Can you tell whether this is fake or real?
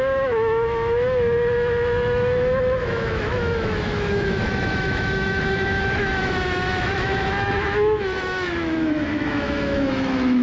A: fake